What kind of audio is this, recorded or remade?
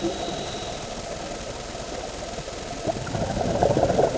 recorded